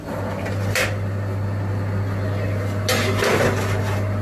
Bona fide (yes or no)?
yes